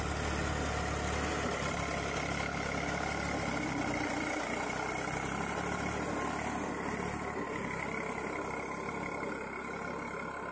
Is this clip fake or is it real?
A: real